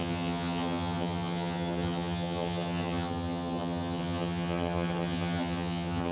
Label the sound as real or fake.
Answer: fake